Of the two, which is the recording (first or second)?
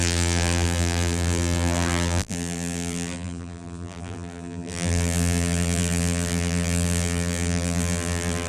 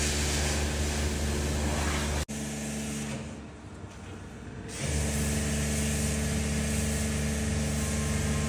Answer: second